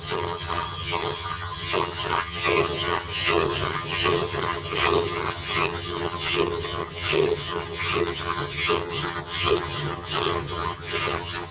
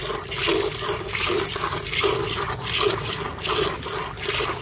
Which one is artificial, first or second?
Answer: first